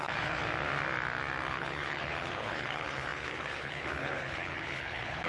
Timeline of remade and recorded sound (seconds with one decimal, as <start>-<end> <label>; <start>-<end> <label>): 0.0-0.4 remade; 0.4-1.5 recorded; 1.5-5.3 remade